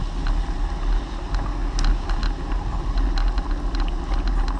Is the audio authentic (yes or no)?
yes